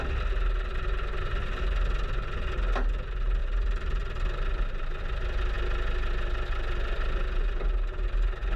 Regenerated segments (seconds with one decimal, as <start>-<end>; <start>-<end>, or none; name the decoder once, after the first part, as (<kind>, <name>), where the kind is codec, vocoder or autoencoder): 3.4-5.0 (vocoder, BigVGAN v2)